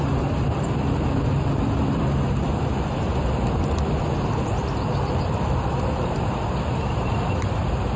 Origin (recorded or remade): recorded